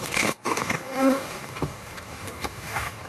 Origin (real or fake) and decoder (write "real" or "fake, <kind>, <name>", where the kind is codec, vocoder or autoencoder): fake, codec, DAC